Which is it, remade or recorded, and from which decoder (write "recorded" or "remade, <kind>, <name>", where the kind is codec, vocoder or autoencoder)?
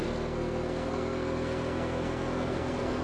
remade, codec, SNAC